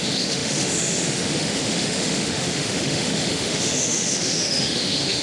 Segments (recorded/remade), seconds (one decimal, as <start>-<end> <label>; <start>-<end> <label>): 0.0-5.2 remade